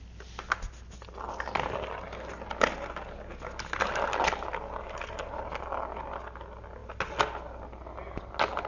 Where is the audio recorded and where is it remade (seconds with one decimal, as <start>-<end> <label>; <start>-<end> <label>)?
0.0-8.7 recorded